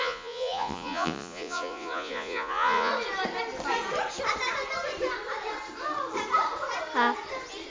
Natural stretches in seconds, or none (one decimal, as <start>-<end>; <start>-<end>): 2.9-7.7